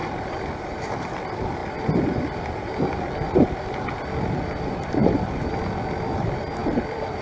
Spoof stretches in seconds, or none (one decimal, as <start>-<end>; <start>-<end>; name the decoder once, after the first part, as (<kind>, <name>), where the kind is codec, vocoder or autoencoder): 0.0-1.1 (vocoder, BigVGAN v2); 5.0-5.5; 6.6-7.2